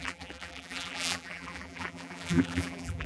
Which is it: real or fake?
fake